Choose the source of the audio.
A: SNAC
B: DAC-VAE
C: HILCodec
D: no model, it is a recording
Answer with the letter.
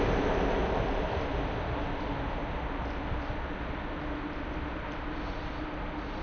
D